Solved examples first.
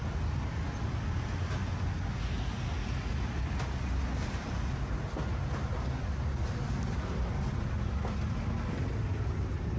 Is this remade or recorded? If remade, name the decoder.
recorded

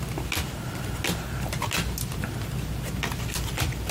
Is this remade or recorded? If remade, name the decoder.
recorded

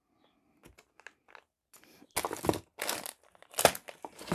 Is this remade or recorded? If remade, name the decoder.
recorded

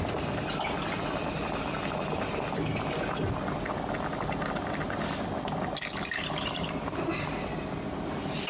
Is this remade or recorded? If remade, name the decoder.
recorded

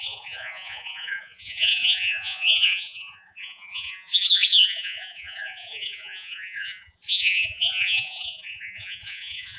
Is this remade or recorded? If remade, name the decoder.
remade, vocoder, Vocos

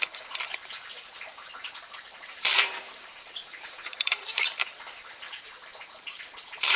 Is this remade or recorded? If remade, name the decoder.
remade, vocoder, BigVGAN v2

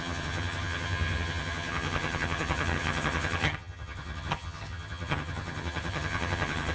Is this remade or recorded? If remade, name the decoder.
remade, vocoder, HiFi-GAN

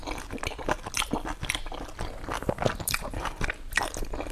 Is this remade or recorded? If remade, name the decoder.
recorded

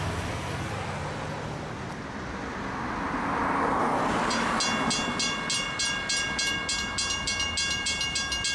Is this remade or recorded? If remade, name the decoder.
recorded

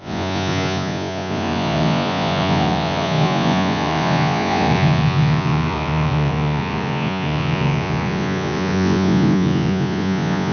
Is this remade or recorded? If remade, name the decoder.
remade, vocoder, Vocos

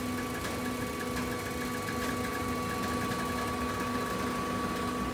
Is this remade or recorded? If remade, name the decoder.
recorded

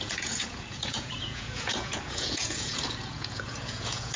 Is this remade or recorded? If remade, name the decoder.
remade, vocoder, Vocos